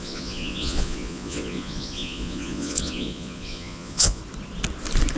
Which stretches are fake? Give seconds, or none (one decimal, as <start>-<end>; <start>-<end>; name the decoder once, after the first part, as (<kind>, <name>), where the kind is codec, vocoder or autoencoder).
0.0-4.2 (vocoder, Vocos)